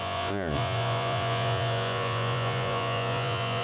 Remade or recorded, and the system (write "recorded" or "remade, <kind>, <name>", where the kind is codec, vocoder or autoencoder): remade, vocoder, Vocos